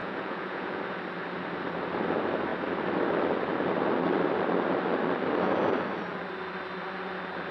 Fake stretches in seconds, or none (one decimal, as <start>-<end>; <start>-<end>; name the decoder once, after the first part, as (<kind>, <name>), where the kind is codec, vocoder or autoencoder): 0.0-0.8 (vocoder, Vocos)